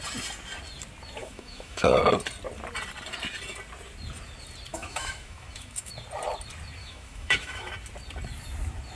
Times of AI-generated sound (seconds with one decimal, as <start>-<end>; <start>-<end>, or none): 1.2-2.0; 4.7-5.9; 6.8-7.7